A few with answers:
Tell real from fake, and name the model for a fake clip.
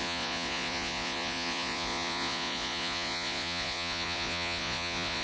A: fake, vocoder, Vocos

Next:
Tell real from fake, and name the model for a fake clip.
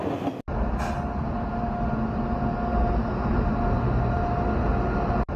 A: real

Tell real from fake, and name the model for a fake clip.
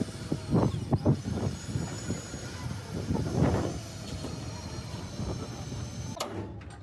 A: real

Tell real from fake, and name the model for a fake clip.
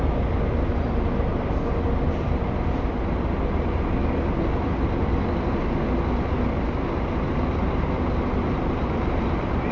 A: real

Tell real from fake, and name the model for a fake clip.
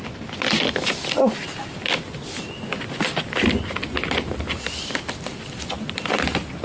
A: real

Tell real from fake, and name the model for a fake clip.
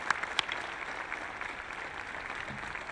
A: real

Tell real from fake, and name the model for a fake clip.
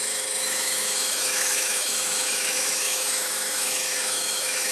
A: fake, autoencoder, DAC-VAE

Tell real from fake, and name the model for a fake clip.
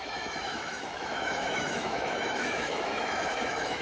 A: fake, autoencoder, DAC-VAE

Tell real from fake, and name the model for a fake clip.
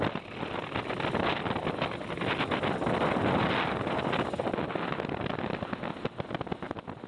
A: real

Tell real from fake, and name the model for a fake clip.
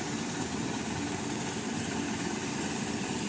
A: real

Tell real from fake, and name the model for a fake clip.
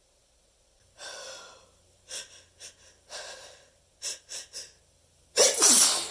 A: real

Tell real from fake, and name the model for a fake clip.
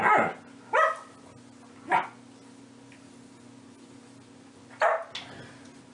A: real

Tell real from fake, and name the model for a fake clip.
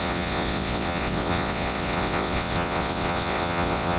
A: fake, vocoder, WaveNeXt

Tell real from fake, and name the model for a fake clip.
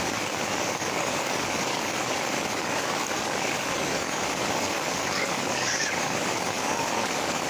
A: fake, codec, DAC